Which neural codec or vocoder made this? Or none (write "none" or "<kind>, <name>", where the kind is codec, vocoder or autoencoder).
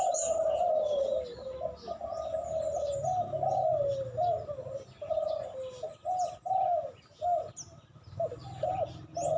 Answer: none